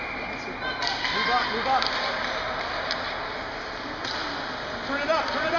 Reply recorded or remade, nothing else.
recorded